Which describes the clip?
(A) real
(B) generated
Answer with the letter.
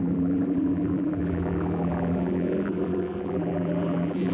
B